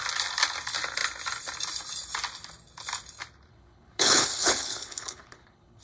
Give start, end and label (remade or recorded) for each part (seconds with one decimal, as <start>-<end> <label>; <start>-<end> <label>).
0.0-3.5 recorded; 3.5-5.8 remade